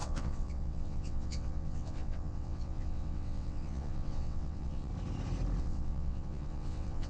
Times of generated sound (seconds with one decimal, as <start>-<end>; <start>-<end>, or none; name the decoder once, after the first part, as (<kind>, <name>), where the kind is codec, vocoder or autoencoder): 0.0-4.9 (vocoder, WaveNeXt); 5.6-7.1

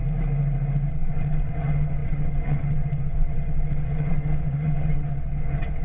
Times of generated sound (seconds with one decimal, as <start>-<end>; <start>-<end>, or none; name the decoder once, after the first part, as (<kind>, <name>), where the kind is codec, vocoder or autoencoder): 0.9-5.8 (vocoder, WaveNeXt)

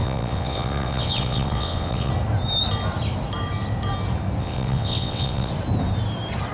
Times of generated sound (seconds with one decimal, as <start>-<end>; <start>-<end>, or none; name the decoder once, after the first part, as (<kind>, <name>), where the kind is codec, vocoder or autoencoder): 0.0-2.1 (vocoder, WaveNeXt); 4.4-5.5

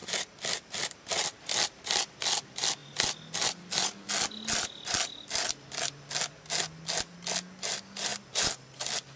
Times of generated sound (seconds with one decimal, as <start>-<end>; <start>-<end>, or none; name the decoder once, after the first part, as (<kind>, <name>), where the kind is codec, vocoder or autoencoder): none

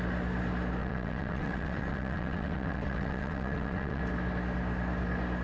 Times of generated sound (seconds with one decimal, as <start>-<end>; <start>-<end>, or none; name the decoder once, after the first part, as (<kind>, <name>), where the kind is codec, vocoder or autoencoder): 0.8-4.0 (vocoder, WaveNeXt)